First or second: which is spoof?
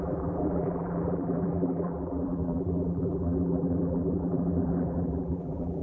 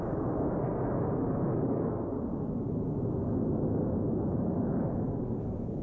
first